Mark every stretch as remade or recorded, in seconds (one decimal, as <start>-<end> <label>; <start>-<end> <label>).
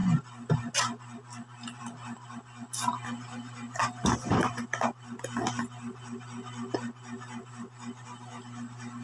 0.0-9.0 recorded